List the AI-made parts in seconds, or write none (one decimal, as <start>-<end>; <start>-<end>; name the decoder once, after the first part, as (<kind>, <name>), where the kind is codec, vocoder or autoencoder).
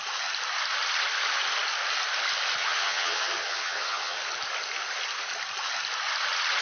2.6-4.2 (vocoder, HiFi-GAN)